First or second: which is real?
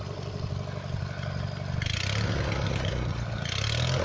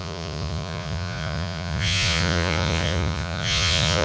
first